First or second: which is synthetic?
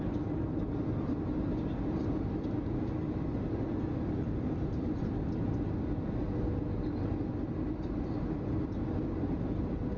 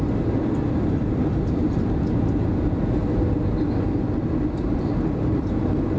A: second